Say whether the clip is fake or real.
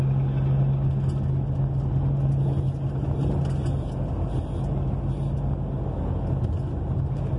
real